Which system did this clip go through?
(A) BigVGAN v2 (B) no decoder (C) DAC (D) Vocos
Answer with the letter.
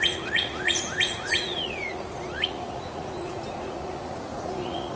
D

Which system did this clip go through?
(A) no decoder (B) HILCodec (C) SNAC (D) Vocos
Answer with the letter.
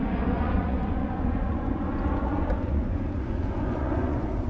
D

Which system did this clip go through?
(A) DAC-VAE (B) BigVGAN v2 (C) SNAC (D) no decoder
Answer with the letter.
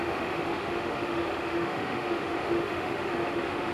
A